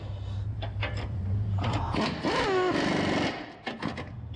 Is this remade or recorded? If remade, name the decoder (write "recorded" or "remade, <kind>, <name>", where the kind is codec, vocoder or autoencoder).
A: recorded